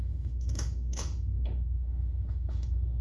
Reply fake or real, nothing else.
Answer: fake